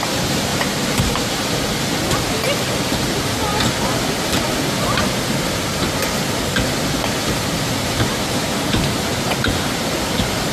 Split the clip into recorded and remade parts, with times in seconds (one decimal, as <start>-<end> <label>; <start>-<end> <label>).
0.0-3.5 remade; 3.5-7.0 recorded; 7.0-10.5 remade